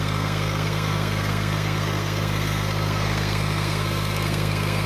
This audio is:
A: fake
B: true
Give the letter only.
A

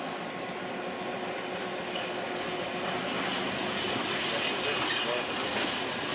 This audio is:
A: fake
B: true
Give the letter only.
B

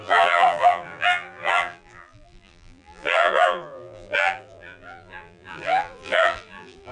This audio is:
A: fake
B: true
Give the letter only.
A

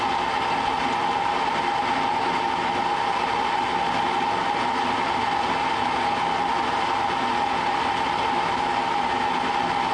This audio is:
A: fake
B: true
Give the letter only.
B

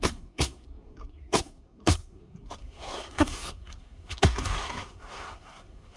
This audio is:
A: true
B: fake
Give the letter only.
B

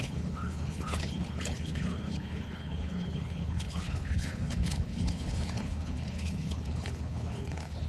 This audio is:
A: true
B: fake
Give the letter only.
B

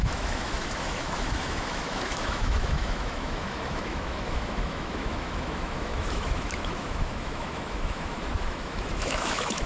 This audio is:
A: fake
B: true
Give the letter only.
A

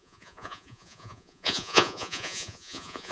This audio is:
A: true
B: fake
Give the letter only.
B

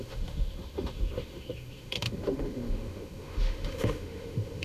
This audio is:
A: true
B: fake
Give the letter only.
B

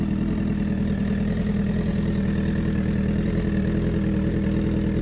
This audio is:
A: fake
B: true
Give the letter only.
B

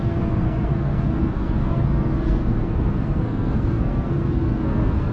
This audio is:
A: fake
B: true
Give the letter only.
A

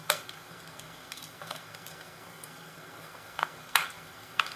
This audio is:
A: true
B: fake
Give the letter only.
B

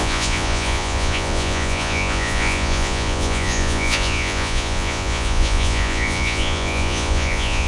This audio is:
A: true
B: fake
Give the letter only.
B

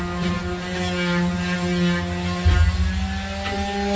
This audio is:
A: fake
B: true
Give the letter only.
B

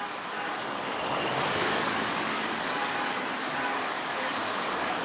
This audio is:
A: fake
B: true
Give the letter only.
A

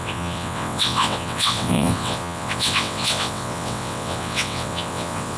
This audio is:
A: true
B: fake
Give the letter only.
B